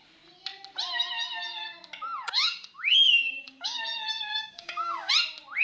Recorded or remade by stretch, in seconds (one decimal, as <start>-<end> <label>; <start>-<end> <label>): 0.0-2.2 recorded; 2.2-3.8 remade; 3.8-4.3 recorded; 4.3-5.1 remade; 5.1-5.6 recorded